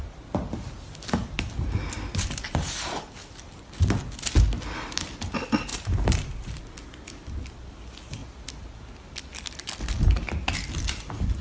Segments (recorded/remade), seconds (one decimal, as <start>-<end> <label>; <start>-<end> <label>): 0.0-5.7 recorded; 5.7-6.6 remade; 6.6-11.4 recorded